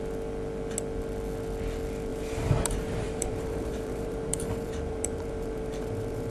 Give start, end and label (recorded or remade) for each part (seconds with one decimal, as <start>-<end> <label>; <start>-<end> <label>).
0.0-2.1 recorded; 2.1-6.3 remade